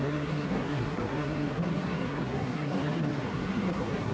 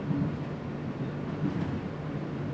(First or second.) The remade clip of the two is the first